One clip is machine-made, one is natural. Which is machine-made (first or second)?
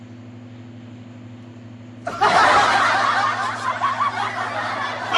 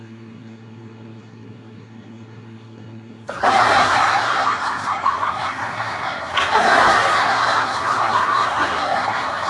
second